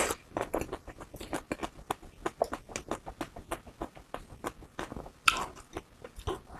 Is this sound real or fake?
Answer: real